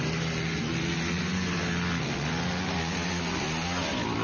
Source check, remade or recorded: recorded